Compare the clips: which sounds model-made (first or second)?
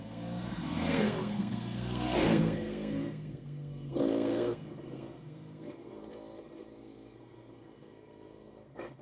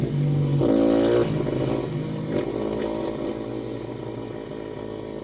first